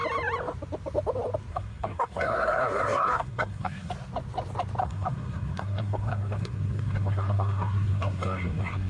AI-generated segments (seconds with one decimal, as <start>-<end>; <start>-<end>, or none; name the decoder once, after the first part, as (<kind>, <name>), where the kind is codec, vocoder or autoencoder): 1.5-3.9 (codec, SNAC); 4.8-8.9